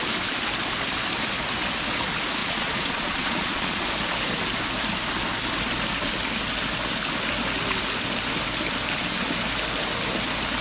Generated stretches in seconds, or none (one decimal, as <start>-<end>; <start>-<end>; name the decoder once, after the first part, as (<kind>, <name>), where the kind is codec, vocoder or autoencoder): 2.4-3.9 (vocoder, Vocos)